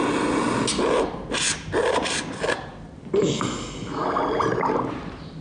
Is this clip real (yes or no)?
yes